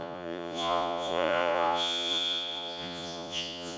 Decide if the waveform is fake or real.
fake